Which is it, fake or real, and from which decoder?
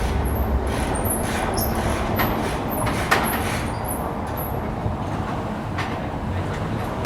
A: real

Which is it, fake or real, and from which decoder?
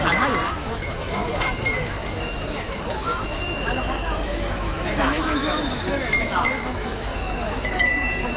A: fake, autoencoder, DAC-VAE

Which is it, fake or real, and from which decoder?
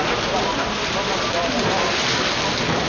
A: real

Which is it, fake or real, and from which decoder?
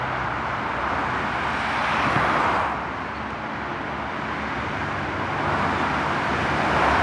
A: real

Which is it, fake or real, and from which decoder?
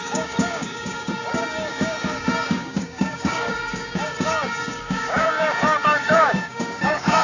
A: fake, codec, DAC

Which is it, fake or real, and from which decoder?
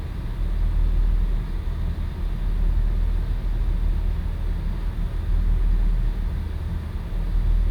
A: real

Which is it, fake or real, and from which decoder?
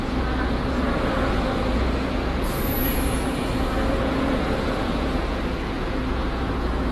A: fake, vocoder, Vocos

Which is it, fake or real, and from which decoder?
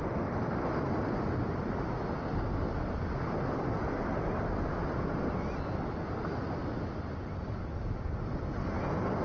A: real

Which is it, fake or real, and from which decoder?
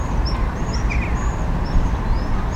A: real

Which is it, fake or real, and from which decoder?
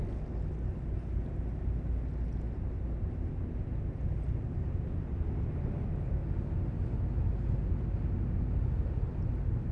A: real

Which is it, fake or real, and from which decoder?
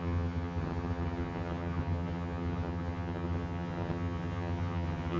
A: fake, vocoder, HiFi-GAN